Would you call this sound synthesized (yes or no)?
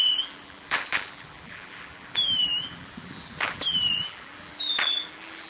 yes